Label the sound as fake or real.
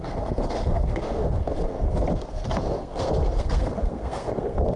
fake